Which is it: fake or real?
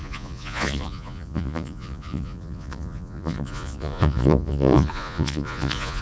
fake